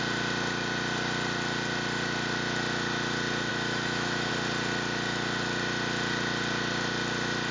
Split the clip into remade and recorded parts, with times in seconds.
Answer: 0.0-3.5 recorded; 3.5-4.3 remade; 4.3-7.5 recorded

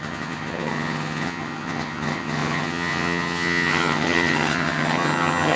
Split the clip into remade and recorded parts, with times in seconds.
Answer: 0.0-5.6 remade